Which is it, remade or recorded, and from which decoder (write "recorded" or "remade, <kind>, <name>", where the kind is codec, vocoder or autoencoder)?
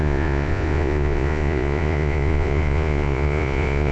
remade, vocoder, Vocos